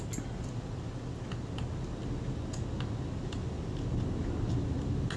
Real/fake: real